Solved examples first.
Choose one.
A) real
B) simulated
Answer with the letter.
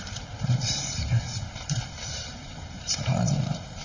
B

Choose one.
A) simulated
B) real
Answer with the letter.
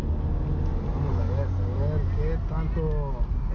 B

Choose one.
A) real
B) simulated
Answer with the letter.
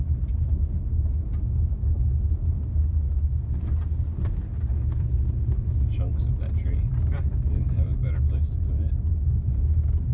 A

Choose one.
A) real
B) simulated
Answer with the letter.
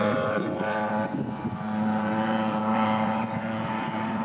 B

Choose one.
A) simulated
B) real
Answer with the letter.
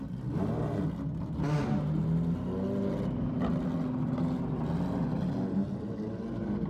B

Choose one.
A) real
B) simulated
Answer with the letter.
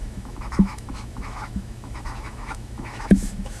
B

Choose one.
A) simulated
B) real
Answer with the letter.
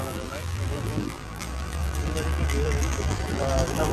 A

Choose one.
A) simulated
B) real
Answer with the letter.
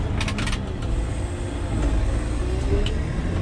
B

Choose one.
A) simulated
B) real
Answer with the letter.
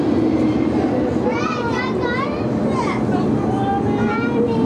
B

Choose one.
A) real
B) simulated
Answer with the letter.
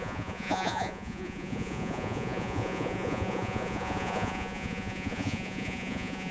B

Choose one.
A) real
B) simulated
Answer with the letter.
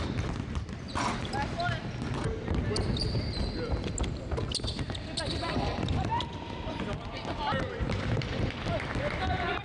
A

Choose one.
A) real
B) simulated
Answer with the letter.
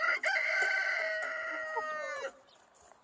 A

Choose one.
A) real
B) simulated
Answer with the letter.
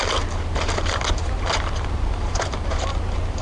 B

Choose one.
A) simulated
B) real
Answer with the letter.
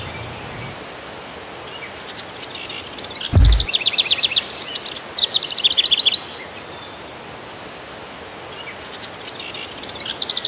B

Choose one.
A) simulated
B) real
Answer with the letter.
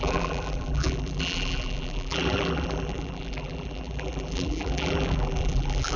A